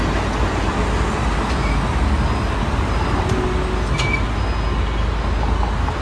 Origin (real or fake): real